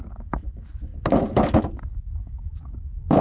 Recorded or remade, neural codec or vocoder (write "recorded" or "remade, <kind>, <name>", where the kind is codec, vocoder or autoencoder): remade, autoencoder, DAC-VAE